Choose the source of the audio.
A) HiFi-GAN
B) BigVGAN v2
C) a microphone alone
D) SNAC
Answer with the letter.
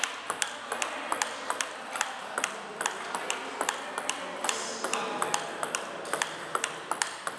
C